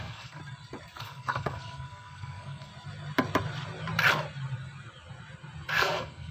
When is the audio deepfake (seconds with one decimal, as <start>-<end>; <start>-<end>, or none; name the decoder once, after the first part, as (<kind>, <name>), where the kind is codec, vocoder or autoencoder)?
0.0-0.4 (codec, SNAC); 1.0-2.7; 5.7-6.3